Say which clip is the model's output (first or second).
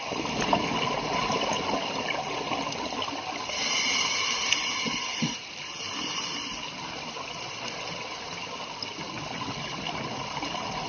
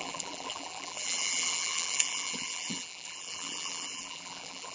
second